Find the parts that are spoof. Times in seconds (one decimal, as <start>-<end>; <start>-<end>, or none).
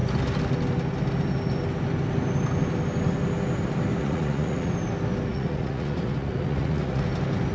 4.0-4.7; 5.3-7.0